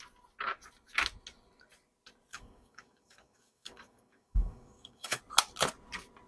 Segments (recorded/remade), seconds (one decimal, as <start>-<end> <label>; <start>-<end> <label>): 0.0-2.3 recorded; 2.3-5.2 remade; 5.2-6.3 recorded